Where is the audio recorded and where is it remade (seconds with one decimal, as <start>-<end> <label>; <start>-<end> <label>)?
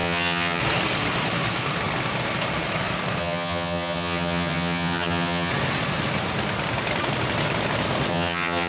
0.0-0.6 remade; 0.6-3.2 recorded; 3.2-5.5 remade; 5.5-8.1 recorded; 8.1-8.7 remade